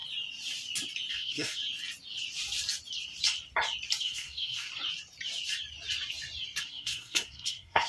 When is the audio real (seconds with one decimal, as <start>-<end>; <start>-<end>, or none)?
0.0-1.1; 1.6-4.0; 4.7-6.6